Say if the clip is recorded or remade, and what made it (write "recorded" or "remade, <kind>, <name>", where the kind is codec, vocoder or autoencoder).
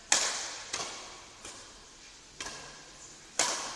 recorded